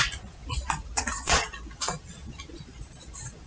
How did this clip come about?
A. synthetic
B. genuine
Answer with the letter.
A